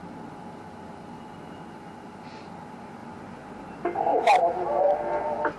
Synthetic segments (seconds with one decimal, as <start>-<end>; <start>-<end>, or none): none